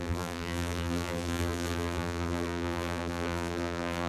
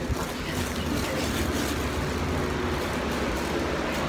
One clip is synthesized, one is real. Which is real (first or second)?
second